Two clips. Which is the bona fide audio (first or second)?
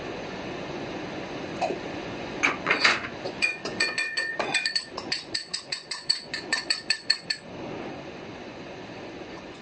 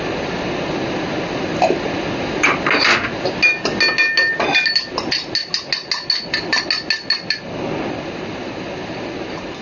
second